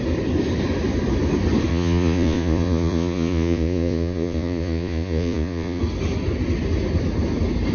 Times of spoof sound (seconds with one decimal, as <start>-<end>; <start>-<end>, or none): 1.7-5.8